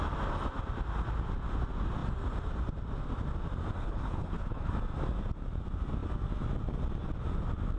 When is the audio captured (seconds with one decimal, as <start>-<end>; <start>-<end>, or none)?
0.0-3.8; 4.7-7.8